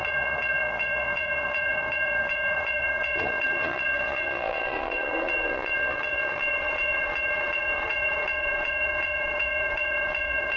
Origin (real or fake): fake